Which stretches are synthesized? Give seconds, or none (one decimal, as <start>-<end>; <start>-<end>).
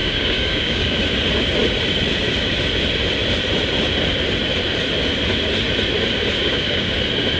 0.0-1.0; 6.4-7.0